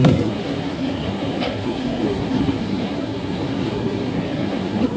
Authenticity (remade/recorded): remade